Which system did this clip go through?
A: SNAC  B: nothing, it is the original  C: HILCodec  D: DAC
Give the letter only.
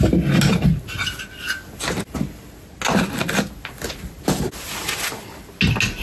B